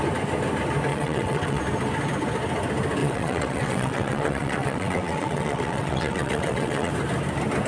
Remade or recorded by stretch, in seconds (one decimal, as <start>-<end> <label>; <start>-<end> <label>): 0.0-0.9 recorded; 0.9-1.6 remade; 1.6-3.0 recorded; 3.0-6.9 remade; 6.9-7.7 recorded